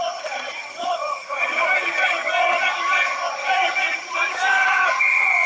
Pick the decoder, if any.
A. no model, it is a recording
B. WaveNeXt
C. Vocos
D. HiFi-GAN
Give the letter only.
D